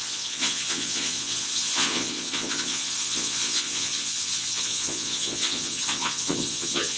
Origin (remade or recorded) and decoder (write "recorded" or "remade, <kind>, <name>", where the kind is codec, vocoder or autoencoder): remade, vocoder, Vocos